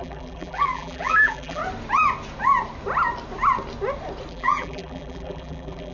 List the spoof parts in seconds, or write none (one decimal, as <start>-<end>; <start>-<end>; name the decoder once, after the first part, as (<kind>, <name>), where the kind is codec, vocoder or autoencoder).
0.0-1.6 (vocoder, BigVGAN v2); 4.3-5.9